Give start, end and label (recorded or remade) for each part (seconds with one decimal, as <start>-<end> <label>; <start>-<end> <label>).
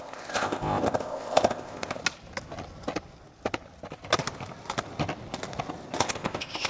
0.0-2.0 remade; 2.0-6.0 recorded; 6.0-6.7 remade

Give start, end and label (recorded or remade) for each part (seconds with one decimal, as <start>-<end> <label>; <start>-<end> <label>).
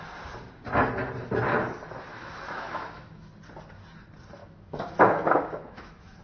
0.0-2.1 recorded; 2.1-3.3 remade; 3.3-4.4 recorded; 4.4-6.2 remade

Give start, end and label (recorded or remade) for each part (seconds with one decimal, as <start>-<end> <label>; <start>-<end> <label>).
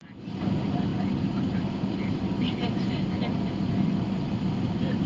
0.0-5.1 recorded